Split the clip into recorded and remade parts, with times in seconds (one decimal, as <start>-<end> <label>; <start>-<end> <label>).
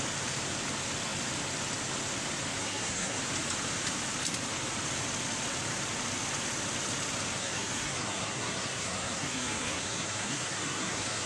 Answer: 0.0-2.6 recorded; 2.6-3.2 remade; 3.2-7.4 recorded; 7.4-11.3 remade